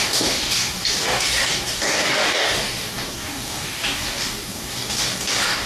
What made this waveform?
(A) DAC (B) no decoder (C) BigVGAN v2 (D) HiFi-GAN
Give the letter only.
A